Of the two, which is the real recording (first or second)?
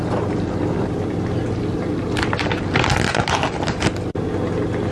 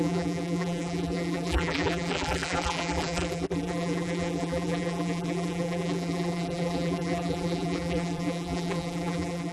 first